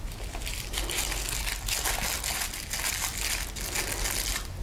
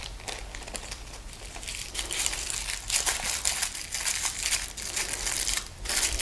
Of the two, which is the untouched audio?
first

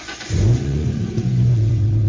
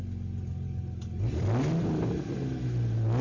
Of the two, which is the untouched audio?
second